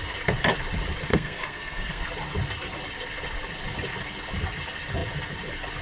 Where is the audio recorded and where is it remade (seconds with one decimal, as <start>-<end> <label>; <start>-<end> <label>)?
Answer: 0.0-1.1 recorded; 1.1-2.0 remade; 2.0-5.8 recorded